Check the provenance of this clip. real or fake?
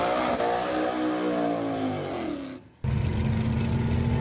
real